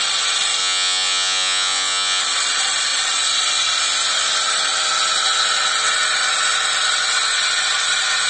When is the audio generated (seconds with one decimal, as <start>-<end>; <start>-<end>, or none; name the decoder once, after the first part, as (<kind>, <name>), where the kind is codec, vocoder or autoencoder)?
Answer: 0.6-2.2 (vocoder, Vocos)